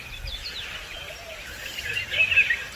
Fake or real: real